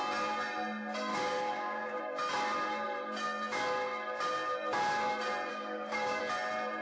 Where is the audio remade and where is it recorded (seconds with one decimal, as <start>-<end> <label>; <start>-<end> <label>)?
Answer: 0.0-1.1 recorded; 1.1-2.0 remade; 2.0-5.5 recorded; 5.5-6.2 remade; 6.2-6.8 recorded